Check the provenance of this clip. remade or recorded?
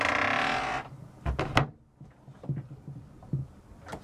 recorded